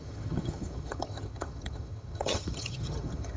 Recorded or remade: remade